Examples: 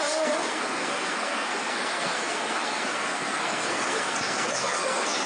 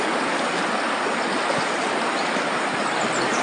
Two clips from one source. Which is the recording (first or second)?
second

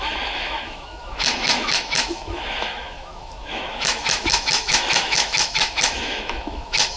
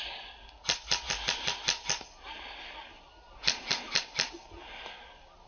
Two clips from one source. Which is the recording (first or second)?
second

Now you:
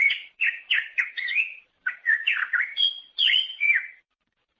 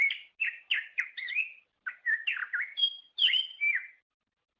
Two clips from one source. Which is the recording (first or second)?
second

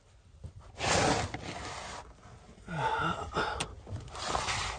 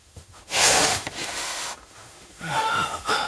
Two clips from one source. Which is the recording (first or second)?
first